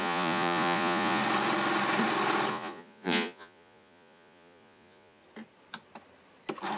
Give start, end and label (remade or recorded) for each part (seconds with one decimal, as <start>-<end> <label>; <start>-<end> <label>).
0.0-1.2 remade; 1.2-2.5 recorded; 2.5-5.2 remade; 5.2-6.8 recorded